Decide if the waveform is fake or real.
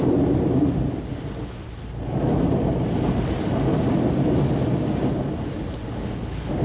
real